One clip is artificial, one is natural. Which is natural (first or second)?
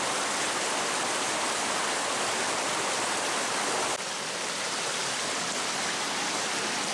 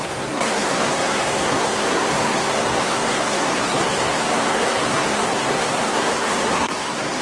first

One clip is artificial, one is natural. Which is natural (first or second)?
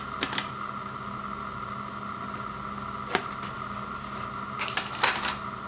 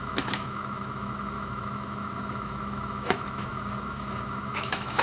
first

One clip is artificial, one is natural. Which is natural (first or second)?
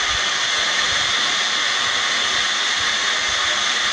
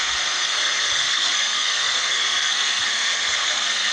first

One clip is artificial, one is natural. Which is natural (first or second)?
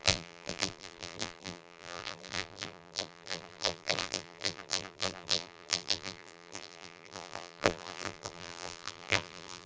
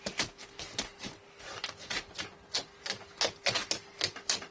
second